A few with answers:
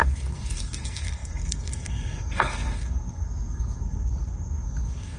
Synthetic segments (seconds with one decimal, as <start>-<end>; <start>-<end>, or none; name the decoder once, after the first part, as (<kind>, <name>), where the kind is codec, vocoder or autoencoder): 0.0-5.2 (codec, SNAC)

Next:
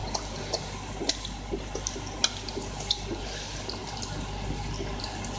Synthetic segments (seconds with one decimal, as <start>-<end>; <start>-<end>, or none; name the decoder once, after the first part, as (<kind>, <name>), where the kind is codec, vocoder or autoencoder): 0.0-3.2 (vocoder, BigVGAN v2)

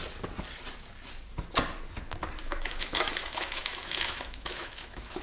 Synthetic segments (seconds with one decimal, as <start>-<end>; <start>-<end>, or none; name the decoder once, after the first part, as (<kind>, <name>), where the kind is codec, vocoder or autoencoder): 2.4-5.2 (autoencoder, DAC-VAE)

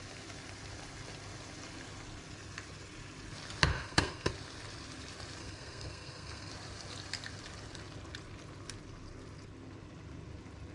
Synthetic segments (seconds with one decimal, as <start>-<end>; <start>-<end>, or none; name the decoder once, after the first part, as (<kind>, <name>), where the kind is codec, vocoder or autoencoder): 3.7-4.3 (codec, SNAC); 5.4-6.5

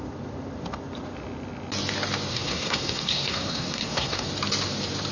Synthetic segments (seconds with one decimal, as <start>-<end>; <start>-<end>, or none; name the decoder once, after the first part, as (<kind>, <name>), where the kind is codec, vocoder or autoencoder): 2.3-4.3 (codec, SNAC)

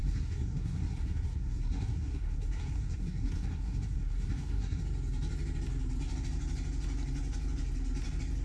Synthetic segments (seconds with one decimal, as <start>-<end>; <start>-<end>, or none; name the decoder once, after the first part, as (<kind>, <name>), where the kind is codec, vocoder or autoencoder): 0.0-4.8 (codec, SNAC)

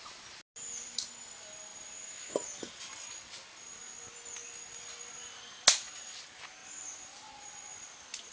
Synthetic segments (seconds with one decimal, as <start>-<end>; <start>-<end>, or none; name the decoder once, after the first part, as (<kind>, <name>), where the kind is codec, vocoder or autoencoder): none

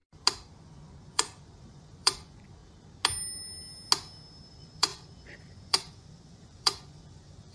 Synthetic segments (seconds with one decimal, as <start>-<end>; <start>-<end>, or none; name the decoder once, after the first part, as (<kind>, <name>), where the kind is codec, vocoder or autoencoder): 0.6-2.6 (vocoder, Vocos); 4.5-7.5